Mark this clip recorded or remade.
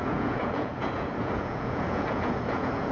remade